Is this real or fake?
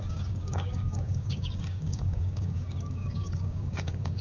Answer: fake